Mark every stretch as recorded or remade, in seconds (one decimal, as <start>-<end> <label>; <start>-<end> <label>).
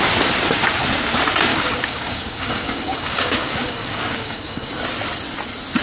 0.0-1.5 recorded; 1.5-4.7 remade; 4.7-5.8 recorded